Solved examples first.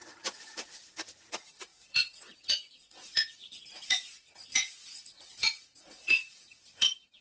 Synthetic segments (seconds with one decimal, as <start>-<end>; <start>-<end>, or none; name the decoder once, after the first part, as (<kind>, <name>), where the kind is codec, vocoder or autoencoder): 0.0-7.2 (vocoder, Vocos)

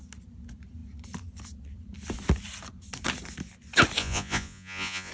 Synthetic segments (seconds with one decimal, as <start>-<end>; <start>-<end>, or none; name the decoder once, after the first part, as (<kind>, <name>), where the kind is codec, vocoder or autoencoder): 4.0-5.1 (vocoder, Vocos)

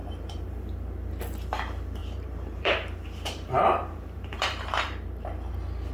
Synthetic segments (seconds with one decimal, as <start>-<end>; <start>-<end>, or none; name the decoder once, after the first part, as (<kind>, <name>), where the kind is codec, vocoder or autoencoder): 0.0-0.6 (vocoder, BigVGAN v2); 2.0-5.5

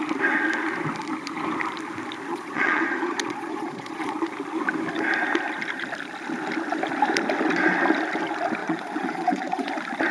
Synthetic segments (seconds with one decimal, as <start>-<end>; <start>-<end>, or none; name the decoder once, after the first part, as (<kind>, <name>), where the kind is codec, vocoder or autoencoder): 2.3-4.1 (vocoder, Vocos); 8.6-9.7

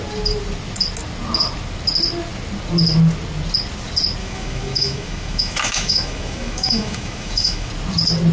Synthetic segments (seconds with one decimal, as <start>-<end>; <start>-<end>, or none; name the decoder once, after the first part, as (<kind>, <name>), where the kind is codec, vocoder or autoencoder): 4.2-7.7 (autoencoder, DAC-VAE)

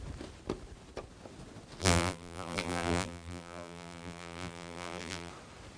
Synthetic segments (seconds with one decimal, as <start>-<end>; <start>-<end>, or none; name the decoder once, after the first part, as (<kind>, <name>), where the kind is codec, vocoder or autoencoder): 1.8-5.3 (vocoder, BigVGAN v2)